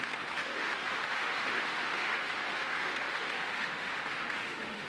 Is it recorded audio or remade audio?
remade